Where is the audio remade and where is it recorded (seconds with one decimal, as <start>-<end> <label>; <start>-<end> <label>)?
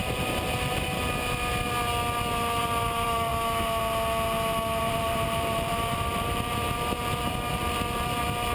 0.0-1.5 remade; 1.5-2.6 recorded; 2.6-3.3 remade; 3.3-4.8 recorded; 4.8-8.5 remade